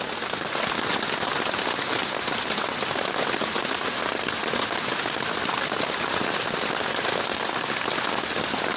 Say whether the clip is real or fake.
real